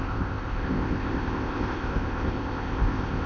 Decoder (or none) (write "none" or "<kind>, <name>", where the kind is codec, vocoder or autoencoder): codec, ZipCodec